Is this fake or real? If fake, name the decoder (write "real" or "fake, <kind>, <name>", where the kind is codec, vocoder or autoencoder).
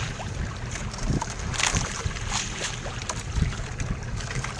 fake, vocoder, BigVGAN v2